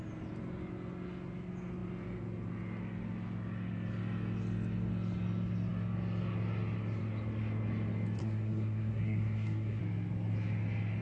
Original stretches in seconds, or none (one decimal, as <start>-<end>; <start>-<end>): 0.0-8.2; 9.8-11.0